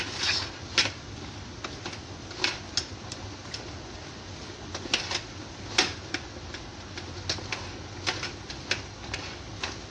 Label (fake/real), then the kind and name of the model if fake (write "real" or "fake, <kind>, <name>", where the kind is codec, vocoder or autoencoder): real